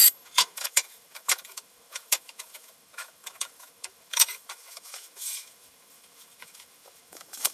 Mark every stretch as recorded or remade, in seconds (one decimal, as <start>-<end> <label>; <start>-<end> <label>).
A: 0.0-7.5 remade